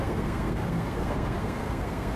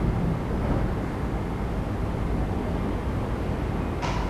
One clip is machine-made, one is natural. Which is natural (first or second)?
second